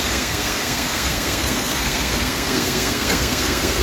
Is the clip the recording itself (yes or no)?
no